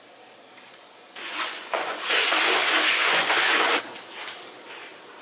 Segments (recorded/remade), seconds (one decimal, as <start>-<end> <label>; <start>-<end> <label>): 0.0-0.7 recorded; 0.7-3.8 remade; 3.8-5.2 recorded